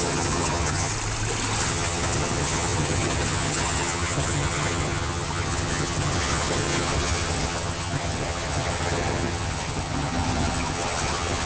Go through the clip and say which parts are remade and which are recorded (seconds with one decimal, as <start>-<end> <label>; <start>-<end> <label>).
0.0-0.9 remade; 0.9-1.6 recorded; 1.6-11.5 remade